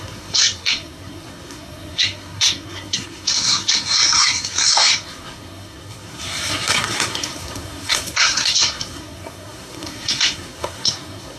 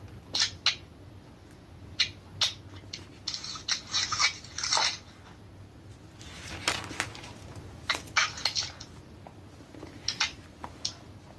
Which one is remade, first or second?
first